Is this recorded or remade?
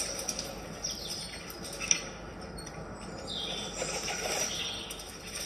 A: recorded